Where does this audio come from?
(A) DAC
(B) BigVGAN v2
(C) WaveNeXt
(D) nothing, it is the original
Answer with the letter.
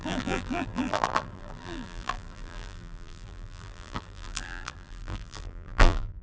B